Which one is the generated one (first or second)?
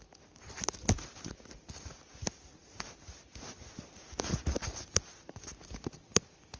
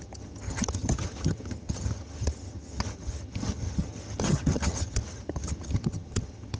second